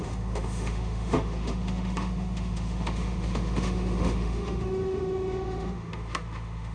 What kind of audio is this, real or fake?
fake